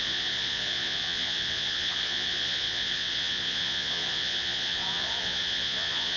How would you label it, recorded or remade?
remade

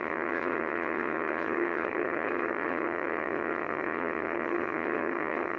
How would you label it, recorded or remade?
remade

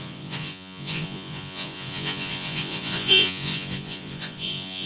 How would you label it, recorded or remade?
remade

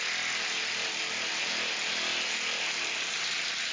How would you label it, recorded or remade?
recorded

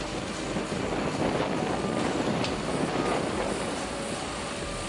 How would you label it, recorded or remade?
recorded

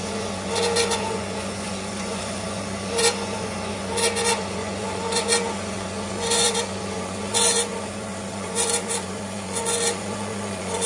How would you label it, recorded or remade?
remade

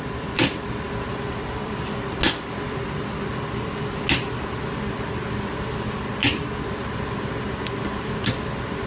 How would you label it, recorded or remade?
recorded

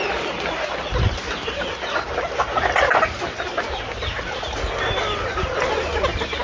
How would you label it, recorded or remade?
recorded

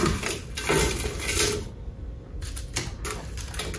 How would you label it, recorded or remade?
recorded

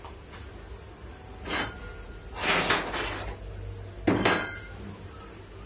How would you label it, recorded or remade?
recorded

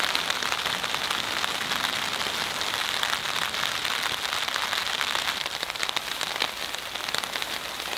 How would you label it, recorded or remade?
recorded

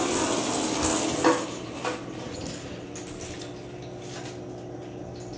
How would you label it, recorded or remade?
recorded